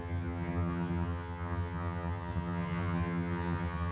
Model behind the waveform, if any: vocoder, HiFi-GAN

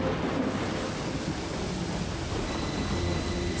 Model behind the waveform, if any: none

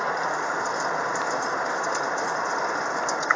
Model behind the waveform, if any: none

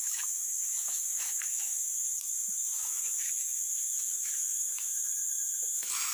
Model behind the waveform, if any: autoencoder, DAC-VAE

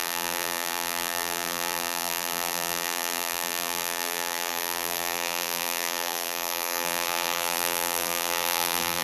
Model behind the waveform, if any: vocoder, BigVGAN v2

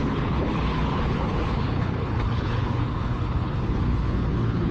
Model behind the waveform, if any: codec, HILCodec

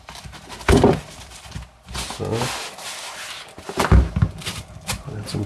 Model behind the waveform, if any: none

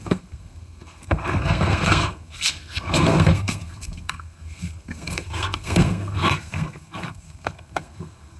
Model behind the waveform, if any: codec, SNAC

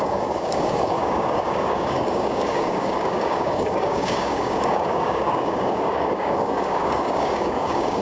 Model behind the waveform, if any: codec, DAC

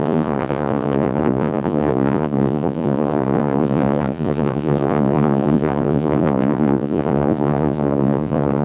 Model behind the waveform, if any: vocoder, Vocos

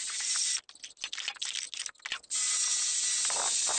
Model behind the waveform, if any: none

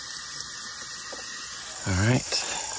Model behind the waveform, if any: none